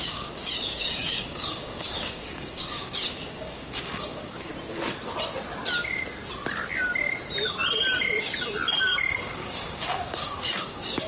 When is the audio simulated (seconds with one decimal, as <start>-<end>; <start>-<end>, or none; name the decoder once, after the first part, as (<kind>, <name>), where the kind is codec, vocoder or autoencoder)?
0.0-4.5 (codec, DAC); 8.8-11.1